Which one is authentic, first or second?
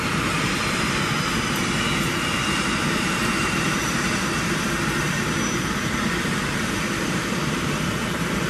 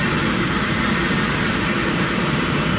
second